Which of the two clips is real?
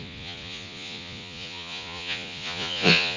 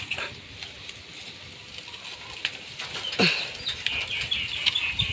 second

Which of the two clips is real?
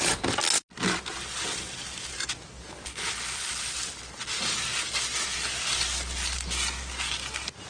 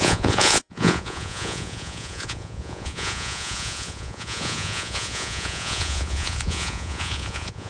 first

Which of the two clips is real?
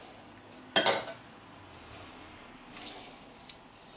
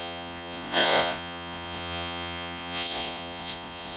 first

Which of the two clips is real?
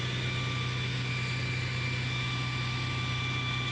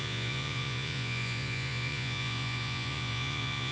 first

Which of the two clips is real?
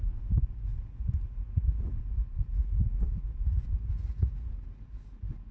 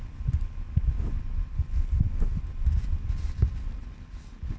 second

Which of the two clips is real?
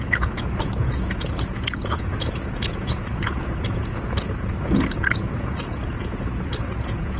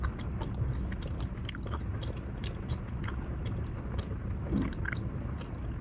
second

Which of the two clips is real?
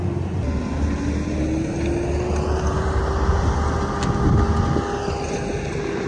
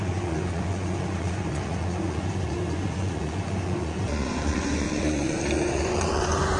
first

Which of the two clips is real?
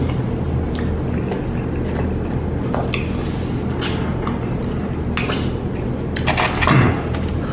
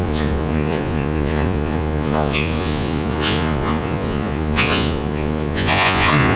first